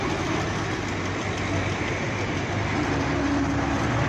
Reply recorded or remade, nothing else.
recorded